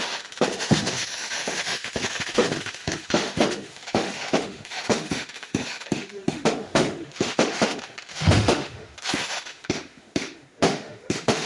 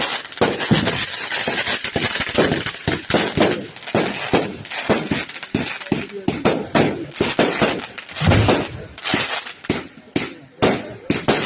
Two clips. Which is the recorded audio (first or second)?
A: second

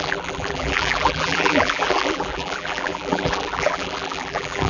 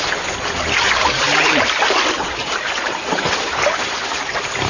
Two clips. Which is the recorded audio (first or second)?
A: second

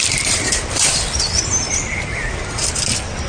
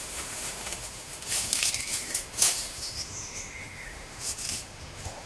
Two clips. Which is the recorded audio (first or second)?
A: first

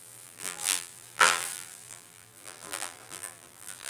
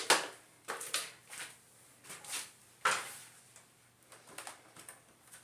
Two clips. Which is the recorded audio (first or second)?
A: second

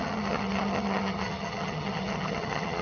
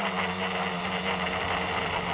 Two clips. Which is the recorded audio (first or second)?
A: second